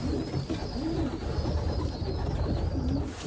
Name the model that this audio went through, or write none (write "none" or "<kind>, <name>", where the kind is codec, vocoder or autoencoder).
none